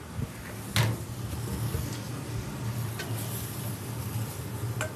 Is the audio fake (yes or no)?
no